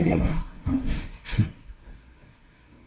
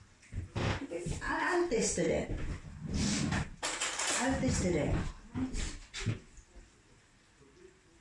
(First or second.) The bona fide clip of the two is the second